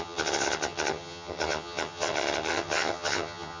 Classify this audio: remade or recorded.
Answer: remade